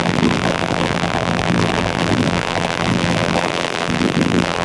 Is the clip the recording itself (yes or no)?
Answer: no